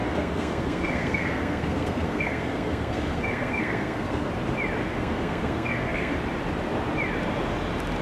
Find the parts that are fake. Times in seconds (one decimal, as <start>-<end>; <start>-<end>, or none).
0.0-4.3; 4.8-6.1